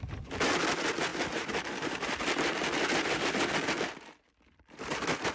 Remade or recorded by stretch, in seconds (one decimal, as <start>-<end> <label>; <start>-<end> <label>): 0.0-5.3 remade